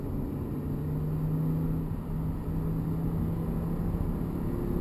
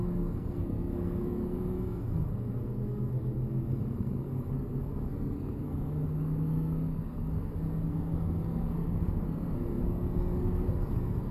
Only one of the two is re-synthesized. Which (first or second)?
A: second